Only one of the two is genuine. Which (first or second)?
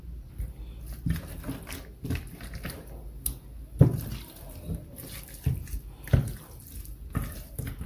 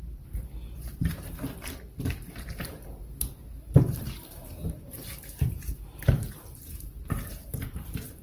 first